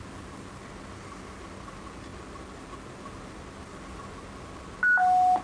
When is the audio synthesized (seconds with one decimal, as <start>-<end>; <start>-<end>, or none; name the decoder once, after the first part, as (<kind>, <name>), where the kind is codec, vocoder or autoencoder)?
none